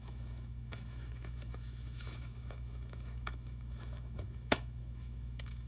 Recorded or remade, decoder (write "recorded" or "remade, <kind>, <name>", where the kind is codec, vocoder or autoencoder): remade, autoencoder, DAC-VAE